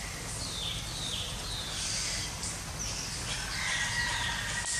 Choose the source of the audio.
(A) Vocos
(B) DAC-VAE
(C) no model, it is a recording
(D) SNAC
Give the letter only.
C